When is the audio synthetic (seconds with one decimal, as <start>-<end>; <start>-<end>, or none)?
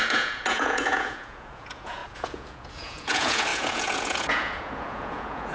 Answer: 0.0-5.5